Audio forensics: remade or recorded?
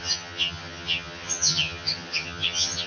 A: remade